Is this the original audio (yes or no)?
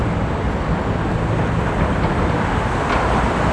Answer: yes